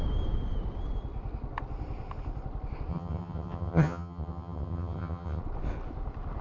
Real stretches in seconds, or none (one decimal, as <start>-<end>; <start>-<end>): 0.0-2.9; 5.4-6.4